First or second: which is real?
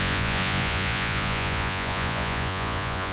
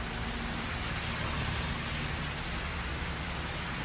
second